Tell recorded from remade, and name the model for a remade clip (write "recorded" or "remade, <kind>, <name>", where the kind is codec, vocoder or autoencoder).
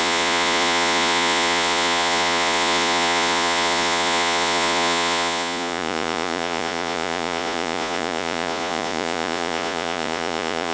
remade, vocoder, Vocos